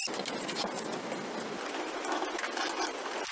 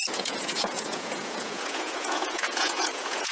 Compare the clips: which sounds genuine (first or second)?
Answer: first